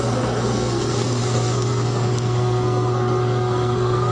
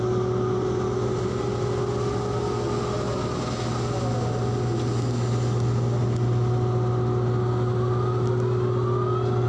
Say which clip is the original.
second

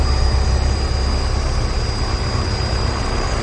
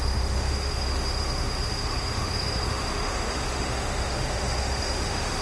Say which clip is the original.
first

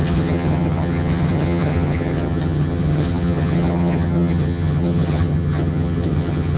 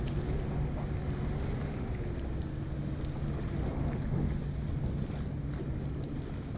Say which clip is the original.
second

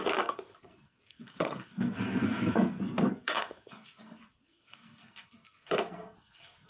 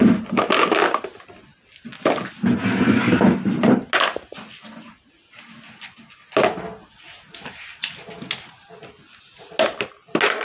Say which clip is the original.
second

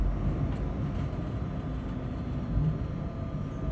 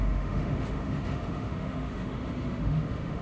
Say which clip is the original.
first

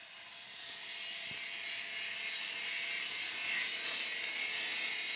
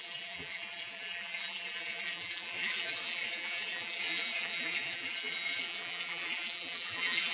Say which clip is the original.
first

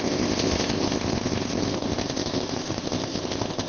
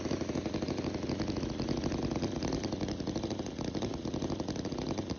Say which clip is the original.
second